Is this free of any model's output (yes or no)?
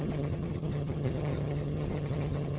no